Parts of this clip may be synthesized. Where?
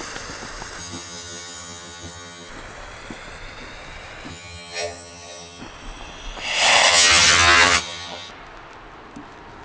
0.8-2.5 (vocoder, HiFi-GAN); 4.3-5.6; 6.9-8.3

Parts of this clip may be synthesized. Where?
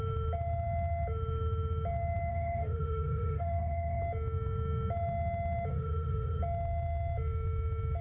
2.3-4.0 (autoencoder, DAC-VAE); 5.7-6.4